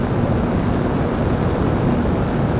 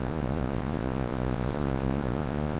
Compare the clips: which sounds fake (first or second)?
second